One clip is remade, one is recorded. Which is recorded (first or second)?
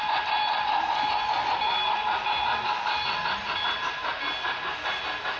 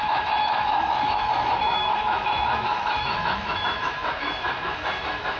first